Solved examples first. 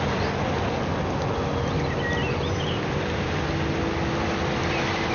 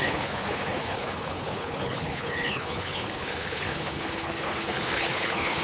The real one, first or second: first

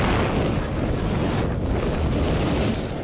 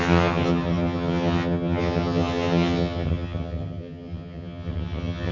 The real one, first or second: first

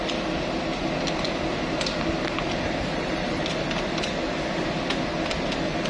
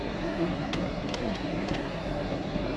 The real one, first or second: first